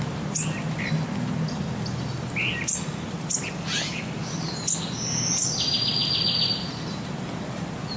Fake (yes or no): no